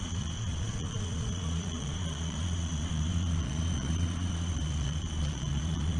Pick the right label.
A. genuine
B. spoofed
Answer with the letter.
B